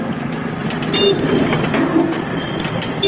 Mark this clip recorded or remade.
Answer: recorded